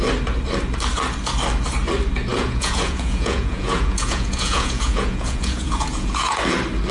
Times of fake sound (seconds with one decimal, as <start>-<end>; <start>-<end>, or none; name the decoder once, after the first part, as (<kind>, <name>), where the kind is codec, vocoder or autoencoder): 2.3-6.4 (vocoder, Vocos)